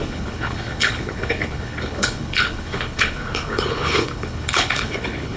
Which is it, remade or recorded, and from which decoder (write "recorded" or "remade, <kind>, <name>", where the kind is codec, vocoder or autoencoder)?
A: remade, codec, HILCodec